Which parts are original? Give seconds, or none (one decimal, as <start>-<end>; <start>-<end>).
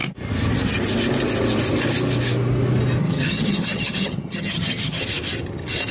0.0-3.0; 5.0-5.9